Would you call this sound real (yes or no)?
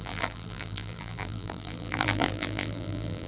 no